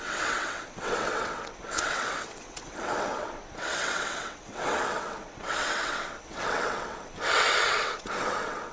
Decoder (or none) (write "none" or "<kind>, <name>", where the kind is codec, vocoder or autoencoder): vocoder, WaveNeXt